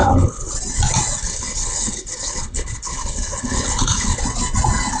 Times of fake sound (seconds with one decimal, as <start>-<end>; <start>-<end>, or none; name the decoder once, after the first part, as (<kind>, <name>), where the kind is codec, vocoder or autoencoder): 0.0-0.5 (codec, HILCodec); 1.2-4.2

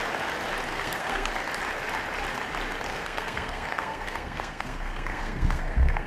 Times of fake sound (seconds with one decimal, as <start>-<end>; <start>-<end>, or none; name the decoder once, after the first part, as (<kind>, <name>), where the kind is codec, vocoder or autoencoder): 0.7-1.3 (codec, SNAC); 2.9-6.1

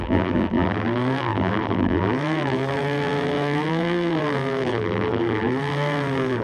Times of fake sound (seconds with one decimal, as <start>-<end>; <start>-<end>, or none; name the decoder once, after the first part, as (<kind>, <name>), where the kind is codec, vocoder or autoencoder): 0.0-6.4 (vocoder, BigVGAN v2)

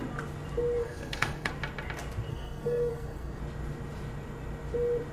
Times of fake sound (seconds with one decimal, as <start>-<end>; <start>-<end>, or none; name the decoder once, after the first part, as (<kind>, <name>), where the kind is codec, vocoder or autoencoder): 0.8-1.5 (codec, SNAC); 2.3-3.4